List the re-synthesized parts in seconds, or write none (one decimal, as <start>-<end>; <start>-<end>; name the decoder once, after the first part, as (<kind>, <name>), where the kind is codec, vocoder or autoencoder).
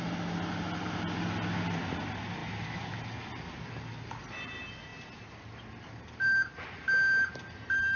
none